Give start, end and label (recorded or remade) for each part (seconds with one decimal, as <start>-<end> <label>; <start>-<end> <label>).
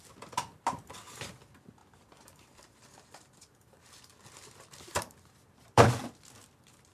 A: 0.0-1.8 recorded; 1.8-5.9 remade; 5.9-6.9 recorded